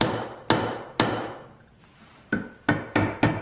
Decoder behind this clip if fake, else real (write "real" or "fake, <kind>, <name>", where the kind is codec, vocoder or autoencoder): real